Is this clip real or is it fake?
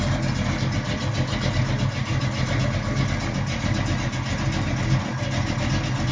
real